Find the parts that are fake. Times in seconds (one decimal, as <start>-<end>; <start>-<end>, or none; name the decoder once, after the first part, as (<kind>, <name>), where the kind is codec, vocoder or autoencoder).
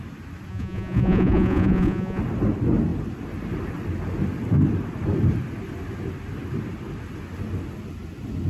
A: 0.5-2.2 (vocoder, Vocos)